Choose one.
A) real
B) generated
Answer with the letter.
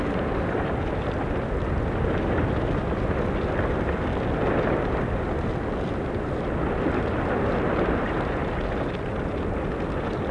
A